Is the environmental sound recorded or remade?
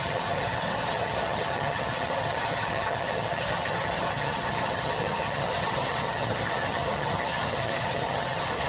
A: remade